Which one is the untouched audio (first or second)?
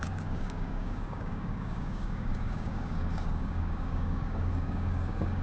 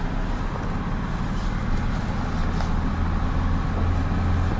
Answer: second